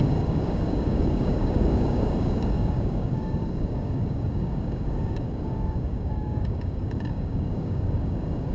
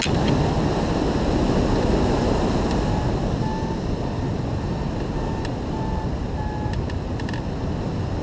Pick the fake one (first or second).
first